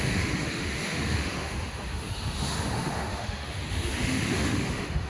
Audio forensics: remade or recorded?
remade